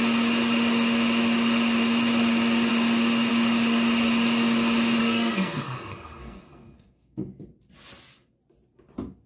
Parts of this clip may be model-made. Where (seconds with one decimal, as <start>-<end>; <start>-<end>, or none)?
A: 5.0-7.3